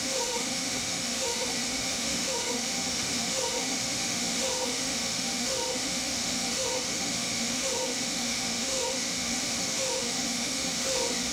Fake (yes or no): yes